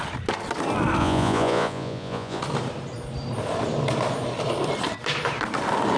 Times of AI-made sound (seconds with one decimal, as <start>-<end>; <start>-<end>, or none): 1.0-2.4